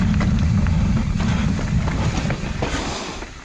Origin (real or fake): real